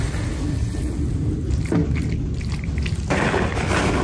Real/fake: real